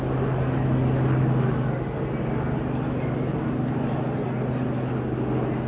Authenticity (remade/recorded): recorded